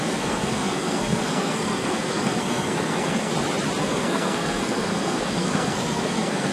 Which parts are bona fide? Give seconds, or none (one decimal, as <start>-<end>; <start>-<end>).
3.3-3.8